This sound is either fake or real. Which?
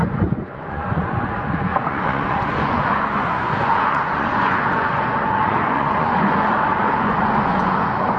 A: fake